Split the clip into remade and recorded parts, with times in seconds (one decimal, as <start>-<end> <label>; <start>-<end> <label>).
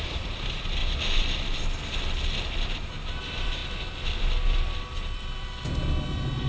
0.0-0.8 remade; 0.8-3.2 recorded; 3.2-3.6 remade; 3.6-5.8 recorded; 5.8-6.5 remade